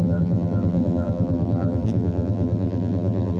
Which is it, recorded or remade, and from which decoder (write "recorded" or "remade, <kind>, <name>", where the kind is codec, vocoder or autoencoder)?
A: remade, vocoder, BigVGAN v2